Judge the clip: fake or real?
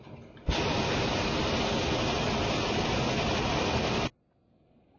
real